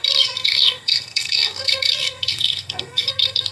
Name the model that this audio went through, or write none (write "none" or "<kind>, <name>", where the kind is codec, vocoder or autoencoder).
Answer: codec, SNAC